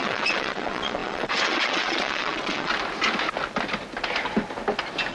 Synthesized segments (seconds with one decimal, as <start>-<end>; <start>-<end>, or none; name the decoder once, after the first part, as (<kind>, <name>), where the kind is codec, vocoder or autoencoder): 0.0-2.7 (vocoder, WaveNeXt)